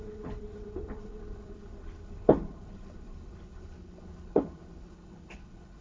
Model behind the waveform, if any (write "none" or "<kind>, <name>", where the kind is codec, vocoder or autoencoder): codec, HILCodec